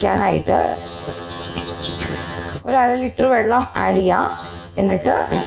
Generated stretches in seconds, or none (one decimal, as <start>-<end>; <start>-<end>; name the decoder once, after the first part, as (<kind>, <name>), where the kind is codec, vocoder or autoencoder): 0.0-5.5 (vocoder, HiFi-GAN)